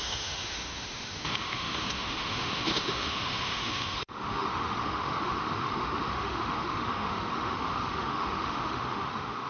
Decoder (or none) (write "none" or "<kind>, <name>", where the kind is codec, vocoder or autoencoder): autoencoder, DAC-VAE